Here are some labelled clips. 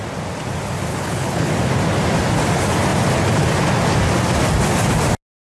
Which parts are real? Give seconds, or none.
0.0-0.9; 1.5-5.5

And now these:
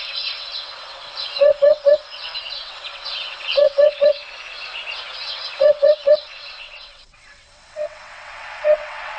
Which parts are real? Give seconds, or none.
4.2-5.2

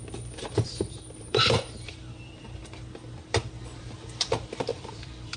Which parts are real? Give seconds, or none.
2.6-4.7

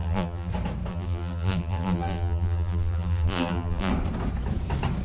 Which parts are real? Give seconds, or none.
0.5-0.9; 3.9-5.0